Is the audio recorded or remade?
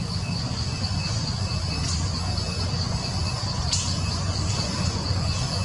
remade